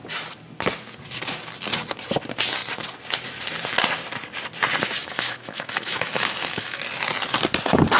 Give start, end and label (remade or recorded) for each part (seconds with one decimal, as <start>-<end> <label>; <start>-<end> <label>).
0.0-5.0 recorded; 5.0-6.8 remade; 6.8-8.0 recorded